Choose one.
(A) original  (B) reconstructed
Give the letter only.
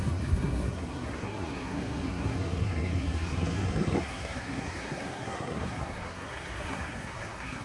B